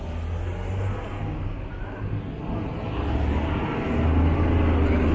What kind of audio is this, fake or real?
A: real